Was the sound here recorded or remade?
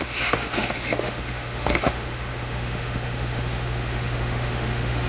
remade